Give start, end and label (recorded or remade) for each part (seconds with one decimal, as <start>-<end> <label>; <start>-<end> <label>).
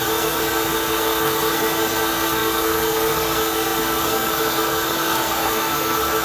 0.0-6.2 remade